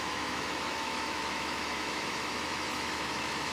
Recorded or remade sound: remade